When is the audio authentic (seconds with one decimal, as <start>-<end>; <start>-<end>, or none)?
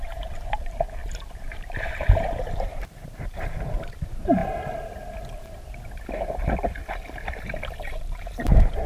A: 4.4-7.8